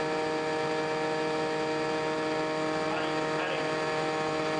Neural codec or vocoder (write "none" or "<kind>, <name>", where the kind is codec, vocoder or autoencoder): none